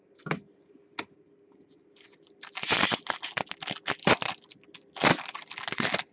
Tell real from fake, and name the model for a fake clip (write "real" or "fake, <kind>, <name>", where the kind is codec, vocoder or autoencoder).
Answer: real